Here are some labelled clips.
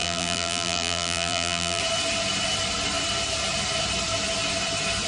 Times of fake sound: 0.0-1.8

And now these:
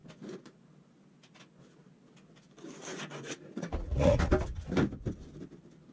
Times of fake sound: 0.0-0.6; 2.9-4.3

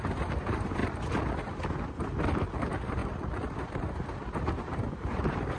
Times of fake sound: 0.0-0.8; 2.6-3.0; 3.7-5.6

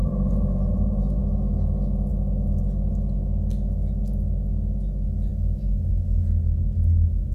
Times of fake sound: 0.0-1.2

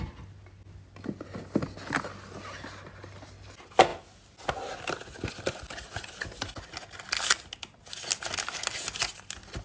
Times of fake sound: none

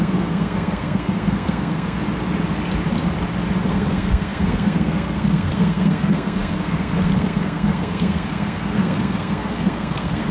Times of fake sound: 0.0-2.0; 3.7-10.3